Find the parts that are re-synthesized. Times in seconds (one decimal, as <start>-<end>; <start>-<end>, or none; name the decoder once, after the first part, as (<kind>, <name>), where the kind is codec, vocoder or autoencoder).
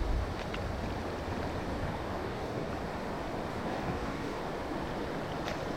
1.7-2.7 (codec, DAC); 3.5-4.4